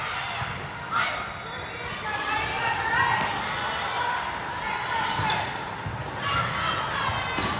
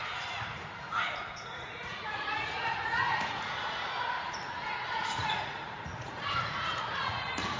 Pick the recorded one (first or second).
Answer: first